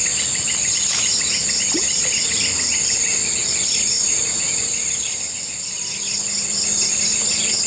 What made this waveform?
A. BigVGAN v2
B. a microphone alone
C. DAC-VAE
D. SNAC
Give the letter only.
B